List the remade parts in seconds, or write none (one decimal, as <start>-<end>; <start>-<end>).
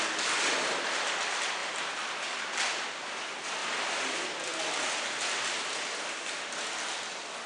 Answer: none